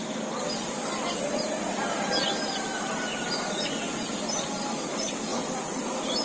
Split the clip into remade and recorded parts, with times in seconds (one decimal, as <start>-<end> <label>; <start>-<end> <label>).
0.0-5.3 recorded; 5.3-5.8 remade; 5.8-6.2 recorded